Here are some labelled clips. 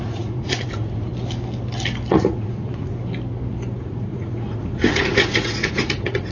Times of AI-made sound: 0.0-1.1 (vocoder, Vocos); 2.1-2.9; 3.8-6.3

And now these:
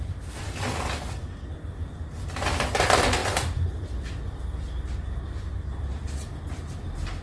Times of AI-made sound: 3.2-6.0 (vocoder, BigVGAN v2)